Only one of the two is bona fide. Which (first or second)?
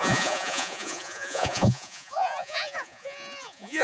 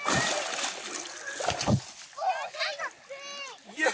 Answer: second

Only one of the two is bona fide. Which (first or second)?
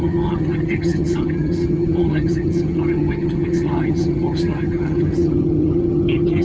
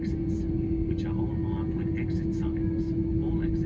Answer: second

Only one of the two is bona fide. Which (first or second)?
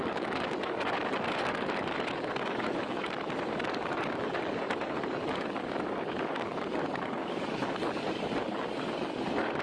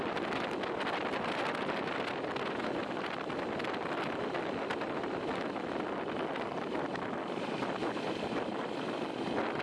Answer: second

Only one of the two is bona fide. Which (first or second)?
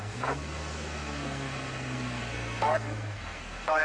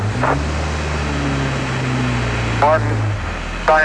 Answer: second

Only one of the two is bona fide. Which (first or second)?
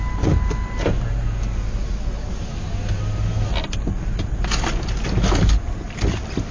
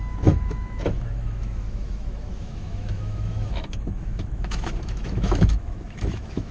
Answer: first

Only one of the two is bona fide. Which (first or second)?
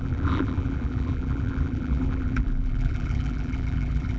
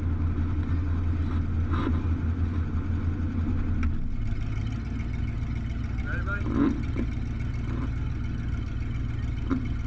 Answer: second